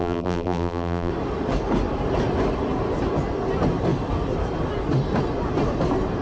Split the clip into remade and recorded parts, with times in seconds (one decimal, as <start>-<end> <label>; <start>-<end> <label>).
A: 0.0-1.1 remade; 1.1-6.2 recorded

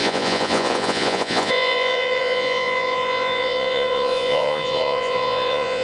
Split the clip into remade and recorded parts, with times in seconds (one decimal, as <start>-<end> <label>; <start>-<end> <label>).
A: 0.0-5.8 remade

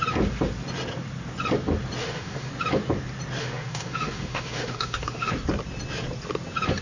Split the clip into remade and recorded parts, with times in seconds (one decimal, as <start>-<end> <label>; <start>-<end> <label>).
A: 0.0-2.0 recorded; 2.0-2.5 remade; 2.5-3.4 recorded; 3.4-5.3 remade; 5.3-6.8 recorded